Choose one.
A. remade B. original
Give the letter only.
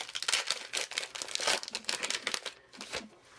B